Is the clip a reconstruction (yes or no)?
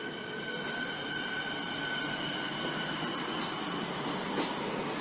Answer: no